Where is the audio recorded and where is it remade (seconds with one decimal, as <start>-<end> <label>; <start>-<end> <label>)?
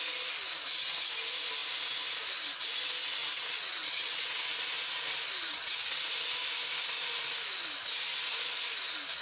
0.0-3.2 recorded; 3.2-4.5 remade; 4.5-5.5 recorded; 5.5-6.0 remade; 6.0-9.2 recorded